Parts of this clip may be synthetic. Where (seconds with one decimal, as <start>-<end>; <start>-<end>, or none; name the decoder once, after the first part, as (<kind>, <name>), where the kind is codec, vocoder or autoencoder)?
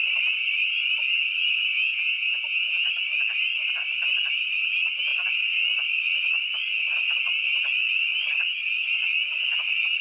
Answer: 1.6-2.9 (vocoder, Vocos)